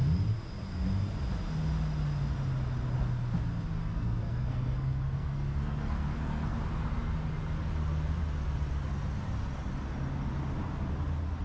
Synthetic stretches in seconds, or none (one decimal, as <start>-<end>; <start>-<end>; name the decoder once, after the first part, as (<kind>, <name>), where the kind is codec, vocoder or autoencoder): 3.8-6.6 (codec, SNAC)